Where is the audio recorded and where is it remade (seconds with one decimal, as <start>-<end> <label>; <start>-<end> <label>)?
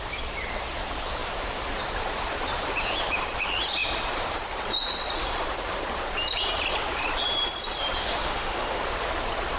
0.0-8.0 recorded; 8.0-8.8 remade; 8.8-9.6 recorded